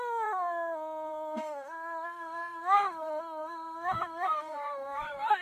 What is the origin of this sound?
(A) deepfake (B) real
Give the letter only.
A